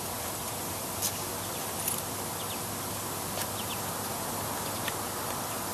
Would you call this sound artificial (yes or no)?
no